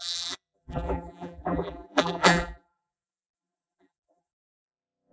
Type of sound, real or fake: fake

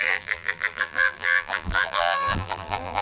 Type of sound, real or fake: fake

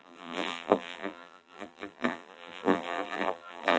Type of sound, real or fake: fake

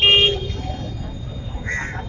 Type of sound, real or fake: real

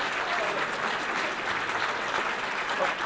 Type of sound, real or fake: real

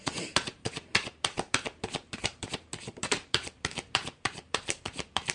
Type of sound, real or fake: fake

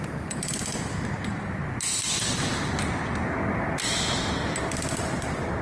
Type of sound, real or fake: real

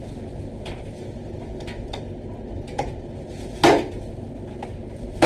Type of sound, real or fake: real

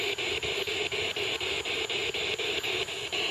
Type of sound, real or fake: real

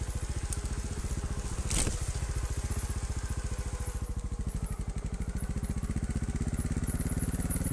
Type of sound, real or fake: real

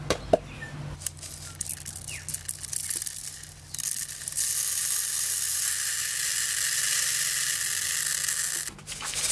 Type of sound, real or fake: real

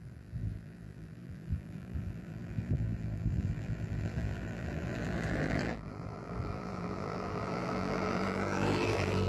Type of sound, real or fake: fake